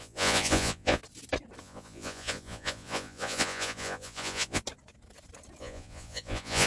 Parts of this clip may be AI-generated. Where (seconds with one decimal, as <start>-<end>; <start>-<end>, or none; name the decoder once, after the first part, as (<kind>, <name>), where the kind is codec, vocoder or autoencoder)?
0.0-1.0 (vocoder, Vocos); 1.6-4.6; 5.6-6.7